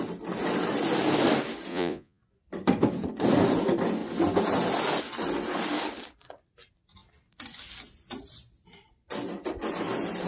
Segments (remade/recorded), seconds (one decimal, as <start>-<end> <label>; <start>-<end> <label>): 0.0-1.7 recorded; 1.7-2.2 remade; 2.2-10.3 recorded